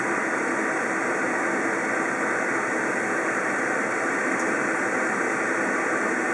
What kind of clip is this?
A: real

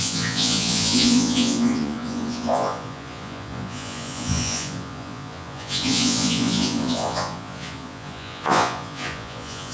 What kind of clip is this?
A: fake